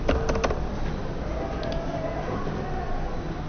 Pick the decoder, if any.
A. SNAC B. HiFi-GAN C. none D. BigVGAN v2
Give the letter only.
C